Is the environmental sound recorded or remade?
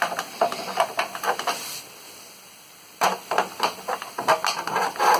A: recorded